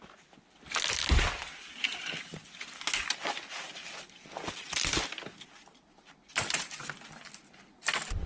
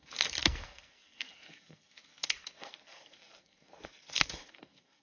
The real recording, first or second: first